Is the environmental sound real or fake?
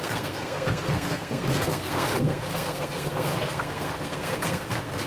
fake